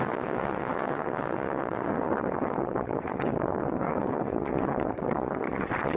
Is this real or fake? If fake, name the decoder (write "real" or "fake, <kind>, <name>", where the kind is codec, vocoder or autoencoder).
fake, vocoder, WaveNeXt